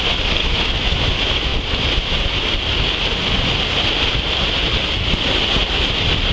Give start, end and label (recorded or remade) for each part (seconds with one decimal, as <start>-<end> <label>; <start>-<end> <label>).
0.0-0.4 recorded; 0.4-1.1 remade; 1.1-6.3 recorded